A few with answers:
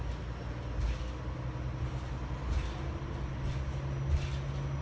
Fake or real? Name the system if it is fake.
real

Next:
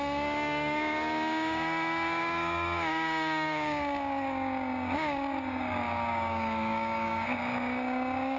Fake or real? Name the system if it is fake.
fake, codec, DAC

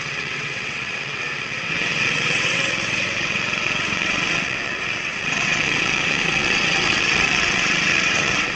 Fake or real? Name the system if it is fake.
fake, vocoder, WaveNeXt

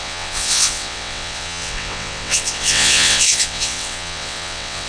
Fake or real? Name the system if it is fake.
fake, vocoder, WaveNeXt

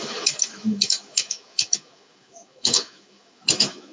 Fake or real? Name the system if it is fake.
fake, autoencoder, DAC-VAE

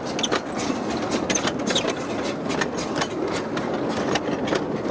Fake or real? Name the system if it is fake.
real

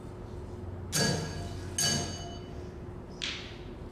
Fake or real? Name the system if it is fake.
real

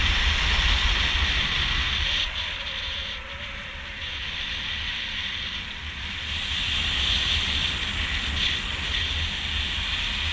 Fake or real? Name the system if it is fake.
real